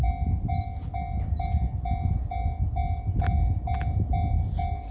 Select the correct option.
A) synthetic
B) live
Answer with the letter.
B